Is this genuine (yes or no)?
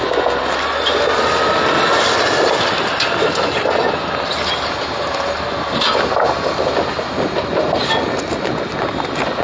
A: yes